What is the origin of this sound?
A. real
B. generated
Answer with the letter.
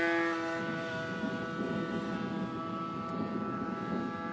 A